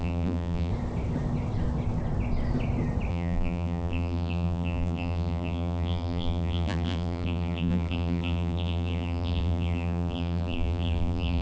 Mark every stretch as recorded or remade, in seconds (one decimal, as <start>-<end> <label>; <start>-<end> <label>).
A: 0.0-0.7 remade; 0.7-3.1 recorded; 3.1-11.4 remade